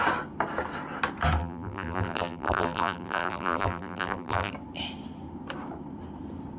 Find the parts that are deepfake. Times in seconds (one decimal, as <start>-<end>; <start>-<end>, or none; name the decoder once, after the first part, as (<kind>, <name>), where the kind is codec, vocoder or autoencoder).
1.4-4.5 (vocoder, BigVGAN v2)